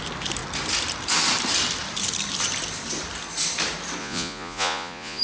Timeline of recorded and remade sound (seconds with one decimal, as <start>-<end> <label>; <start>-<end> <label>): 0.0-4.0 recorded; 4.0-5.2 remade